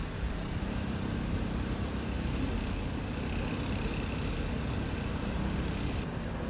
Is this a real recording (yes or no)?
yes